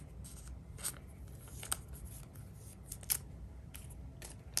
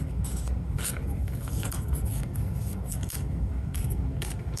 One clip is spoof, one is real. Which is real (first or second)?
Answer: first